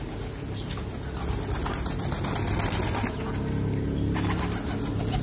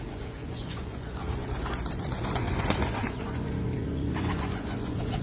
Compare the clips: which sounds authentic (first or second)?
first